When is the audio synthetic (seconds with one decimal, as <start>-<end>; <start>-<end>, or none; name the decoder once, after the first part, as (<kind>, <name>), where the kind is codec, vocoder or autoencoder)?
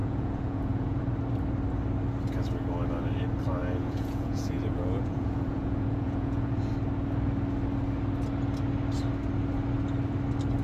0.0-1.0 (vocoder, Vocos); 3.6-6.7